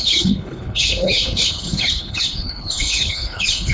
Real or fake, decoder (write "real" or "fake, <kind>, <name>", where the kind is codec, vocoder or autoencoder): fake, codec, HILCodec